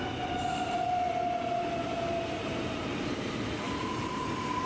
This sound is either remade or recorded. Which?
recorded